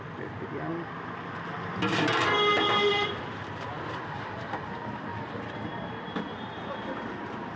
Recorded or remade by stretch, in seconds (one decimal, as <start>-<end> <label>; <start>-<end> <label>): 0.0-0.7 remade; 0.7-2.9 recorded; 2.9-7.6 remade